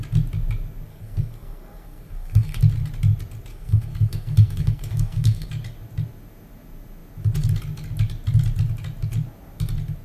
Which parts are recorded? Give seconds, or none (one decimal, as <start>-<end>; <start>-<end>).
0.0-0.9; 2.6-3.5; 5.5-10.0